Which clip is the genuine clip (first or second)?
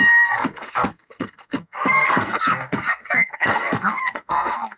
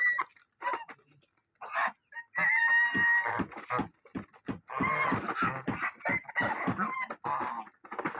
second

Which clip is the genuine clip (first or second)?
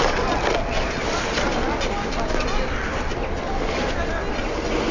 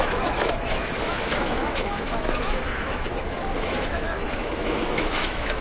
first